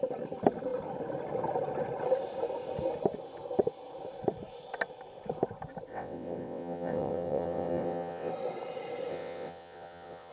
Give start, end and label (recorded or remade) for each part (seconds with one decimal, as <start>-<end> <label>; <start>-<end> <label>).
0.0-5.9 recorded; 5.9-8.3 remade; 8.3-9.1 recorded; 9.1-10.3 remade